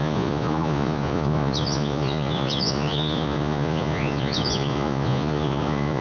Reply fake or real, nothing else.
fake